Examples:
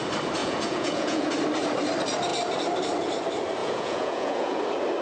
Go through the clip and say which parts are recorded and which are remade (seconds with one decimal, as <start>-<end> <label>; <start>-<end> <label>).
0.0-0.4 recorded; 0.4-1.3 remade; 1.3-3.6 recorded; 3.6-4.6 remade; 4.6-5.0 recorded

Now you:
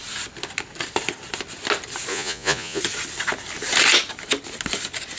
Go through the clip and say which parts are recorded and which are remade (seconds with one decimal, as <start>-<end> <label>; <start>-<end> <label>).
0.0-2.1 recorded; 2.1-2.8 remade; 2.8-5.2 recorded

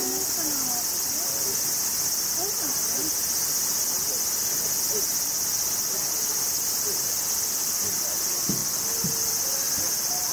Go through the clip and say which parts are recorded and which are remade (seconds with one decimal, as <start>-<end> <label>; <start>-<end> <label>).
0.0-10.3 recorded

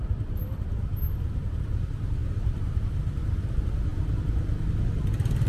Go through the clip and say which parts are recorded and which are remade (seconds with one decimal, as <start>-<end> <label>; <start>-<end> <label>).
0.0-5.5 recorded

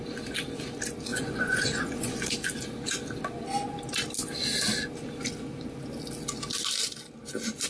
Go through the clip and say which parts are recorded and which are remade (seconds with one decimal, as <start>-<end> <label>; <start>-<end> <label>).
0.0-1.1 recorded; 1.1-2.3 remade; 2.3-7.7 recorded

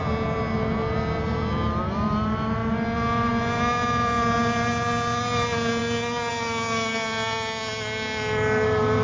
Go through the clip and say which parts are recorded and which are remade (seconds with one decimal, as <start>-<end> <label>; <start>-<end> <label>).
0.0-9.0 recorded

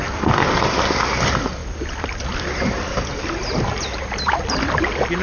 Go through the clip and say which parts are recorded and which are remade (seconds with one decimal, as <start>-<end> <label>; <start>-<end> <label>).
0.0-5.2 recorded

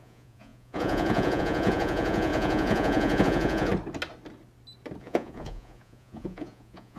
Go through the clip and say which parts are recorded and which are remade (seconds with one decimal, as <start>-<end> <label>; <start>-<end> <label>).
0.0-3.7 remade; 3.7-5.0 recorded; 5.0-7.0 remade